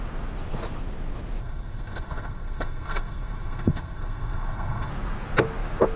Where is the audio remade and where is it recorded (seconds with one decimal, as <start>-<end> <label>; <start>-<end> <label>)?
0.0-1.4 recorded; 1.4-4.9 remade; 4.9-6.0 recorded